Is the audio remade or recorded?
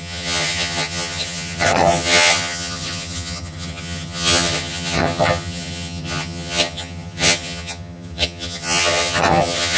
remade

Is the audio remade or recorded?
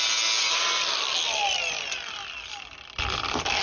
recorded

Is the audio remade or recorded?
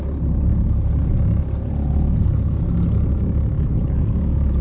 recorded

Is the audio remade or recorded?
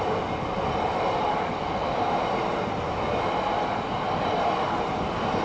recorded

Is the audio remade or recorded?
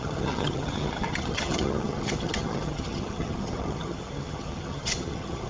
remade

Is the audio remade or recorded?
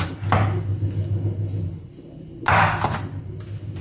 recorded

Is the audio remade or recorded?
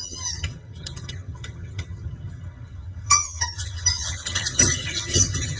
remade